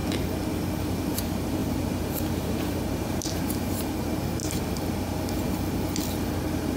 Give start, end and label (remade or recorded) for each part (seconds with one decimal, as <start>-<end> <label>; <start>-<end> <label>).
0.0-1.1 recorded; 1.1-4.4 remade; 4.4-6.2 recorded; 6.2-6.8 remade